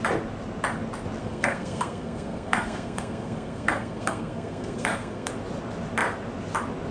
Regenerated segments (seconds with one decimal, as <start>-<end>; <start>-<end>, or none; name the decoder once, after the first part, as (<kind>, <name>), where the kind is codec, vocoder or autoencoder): 1.2-5.3 (codec, SNAC)